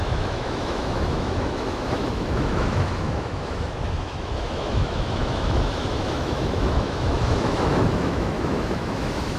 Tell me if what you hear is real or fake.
fake